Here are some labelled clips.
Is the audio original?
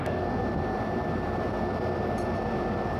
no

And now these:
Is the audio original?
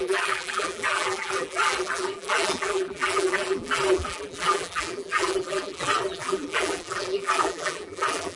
no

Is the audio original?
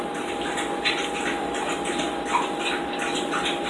yes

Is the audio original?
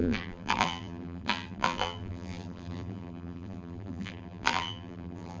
no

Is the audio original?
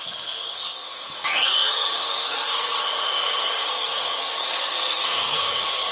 no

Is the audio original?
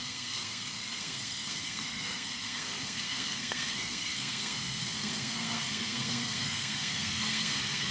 no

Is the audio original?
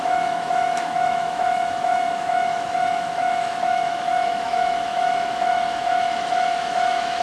no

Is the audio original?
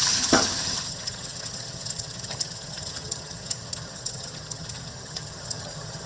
no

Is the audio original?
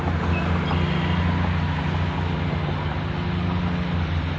yes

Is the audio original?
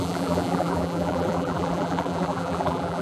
no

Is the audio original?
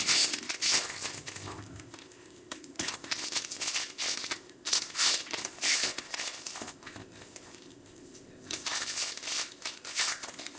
no